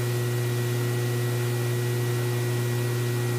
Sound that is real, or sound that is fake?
real